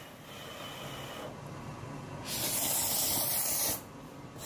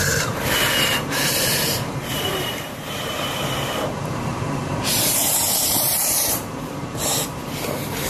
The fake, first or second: second